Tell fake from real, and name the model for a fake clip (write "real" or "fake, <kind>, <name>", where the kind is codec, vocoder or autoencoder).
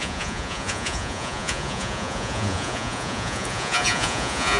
fake, vocoder, Vocos